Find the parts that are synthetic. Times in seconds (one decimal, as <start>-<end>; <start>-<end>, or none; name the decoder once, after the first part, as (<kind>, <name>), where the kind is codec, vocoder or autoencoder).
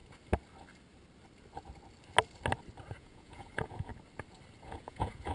2.9-3.9 (vocoder, Vocos); 4.6-5.3